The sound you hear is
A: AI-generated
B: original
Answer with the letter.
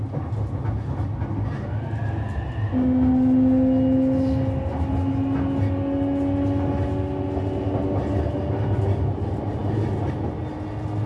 B